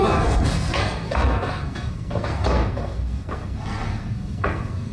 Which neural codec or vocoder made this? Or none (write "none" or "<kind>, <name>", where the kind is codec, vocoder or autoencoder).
codec, SNAC